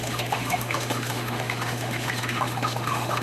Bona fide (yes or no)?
no